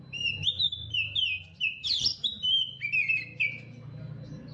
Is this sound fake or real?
real